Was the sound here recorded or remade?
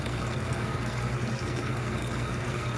remade